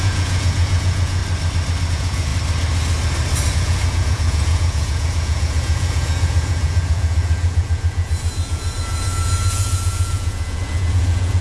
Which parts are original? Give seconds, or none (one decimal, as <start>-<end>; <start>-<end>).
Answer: 1.2-1.9; 2.3-3.5